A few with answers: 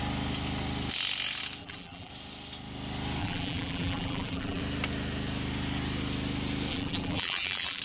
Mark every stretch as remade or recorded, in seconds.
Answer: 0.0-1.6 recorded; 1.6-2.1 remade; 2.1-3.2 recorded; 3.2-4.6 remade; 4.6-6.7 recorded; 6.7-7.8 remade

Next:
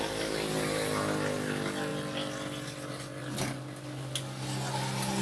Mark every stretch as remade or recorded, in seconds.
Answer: 0.0-5.2 recorded

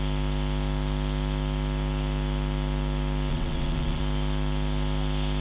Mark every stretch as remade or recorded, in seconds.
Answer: 0.0-3.3 recorded; 3.3-4.0 remade; 4.0-5.4 recorded